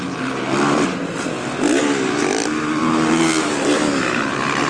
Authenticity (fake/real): real